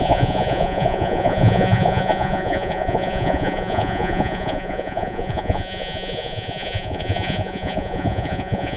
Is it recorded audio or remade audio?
remade